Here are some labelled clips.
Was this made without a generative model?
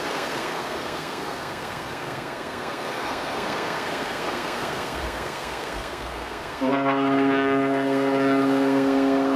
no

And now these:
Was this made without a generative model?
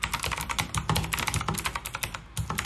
yes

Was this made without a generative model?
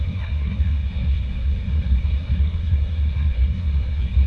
no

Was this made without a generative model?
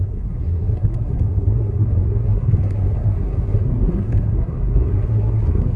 no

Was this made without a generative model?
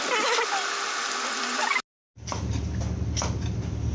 yes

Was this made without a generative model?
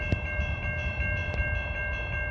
yes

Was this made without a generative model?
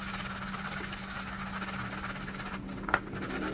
yes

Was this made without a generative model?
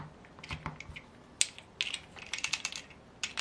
yes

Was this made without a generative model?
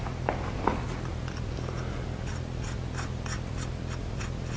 yes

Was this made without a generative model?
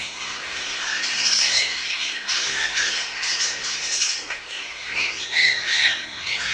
no